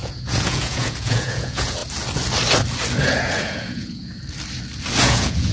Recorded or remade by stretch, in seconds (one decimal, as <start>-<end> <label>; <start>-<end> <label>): 0.0-1.8 remade; 1.8-3.0 recorded; 3.0-4.0 remade; 4.0-5.0 recorded; 5.0-5.5 remade